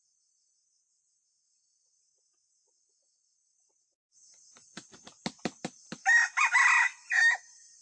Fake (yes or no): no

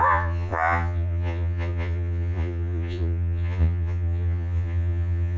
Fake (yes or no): yes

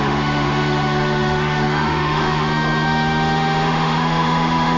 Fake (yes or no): yes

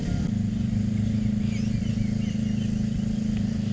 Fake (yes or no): no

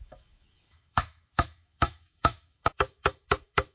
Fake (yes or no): yes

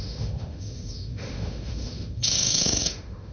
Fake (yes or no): yes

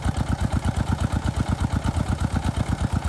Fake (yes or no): no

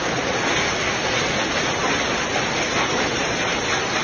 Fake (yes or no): no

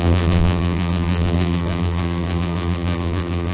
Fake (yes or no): yes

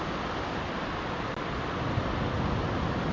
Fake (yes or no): no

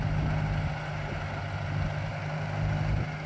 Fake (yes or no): no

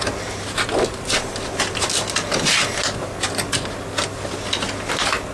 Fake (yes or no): no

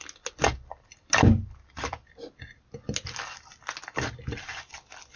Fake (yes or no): no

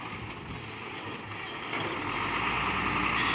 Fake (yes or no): no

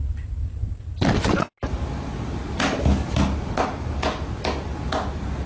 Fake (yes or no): no